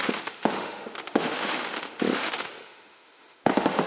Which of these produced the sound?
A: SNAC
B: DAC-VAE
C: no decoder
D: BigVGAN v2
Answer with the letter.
B